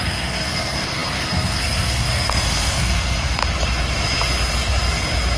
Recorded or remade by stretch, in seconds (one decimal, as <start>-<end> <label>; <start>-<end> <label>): 0.0-3.4 remade; 3.4-5.4 recorded